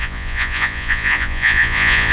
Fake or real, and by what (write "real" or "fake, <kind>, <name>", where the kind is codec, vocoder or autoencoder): fake, vocoder, Vocos